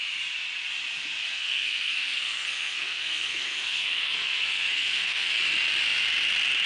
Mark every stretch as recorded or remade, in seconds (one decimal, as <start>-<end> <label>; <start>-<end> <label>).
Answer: 0.0-1.3 recorded; 1.3-5.3 remade; 5.3-6.7 recorded